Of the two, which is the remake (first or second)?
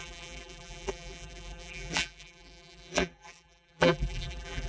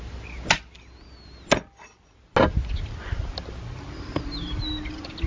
first